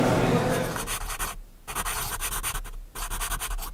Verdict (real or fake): real